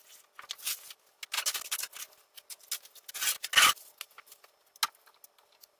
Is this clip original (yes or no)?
yes